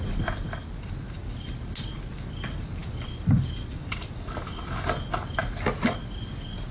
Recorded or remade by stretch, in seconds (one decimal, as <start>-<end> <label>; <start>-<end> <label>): 0.0-2.8 recorded; 2.8-4.5 remade; 4.5-6.7 recorded